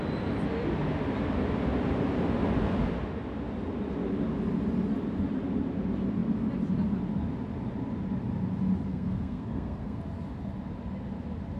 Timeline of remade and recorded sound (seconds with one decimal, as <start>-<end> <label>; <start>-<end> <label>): 0.0-8.9 recorded; 8.9-10.0 remade; 10.0-11.6 recorded